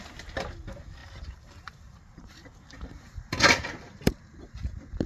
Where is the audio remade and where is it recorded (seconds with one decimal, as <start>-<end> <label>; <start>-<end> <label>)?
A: 0.0-1.0 recorded; 1.0-4.1 remade; 4.1-5.1 recorded